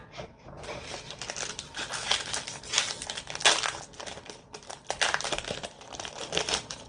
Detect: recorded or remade recorded